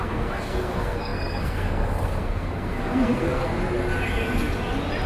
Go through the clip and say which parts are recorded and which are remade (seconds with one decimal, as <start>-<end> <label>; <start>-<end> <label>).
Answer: 0.0-3.5 remade; 3.5-5.1 recorded